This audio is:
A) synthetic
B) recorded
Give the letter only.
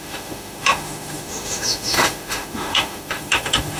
A